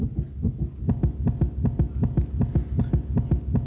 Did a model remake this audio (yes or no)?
no